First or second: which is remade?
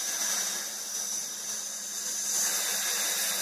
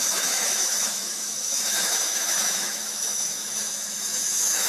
second